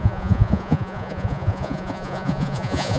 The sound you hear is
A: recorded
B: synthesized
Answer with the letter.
B